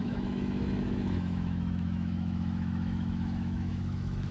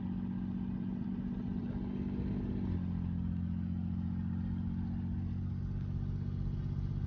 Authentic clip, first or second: second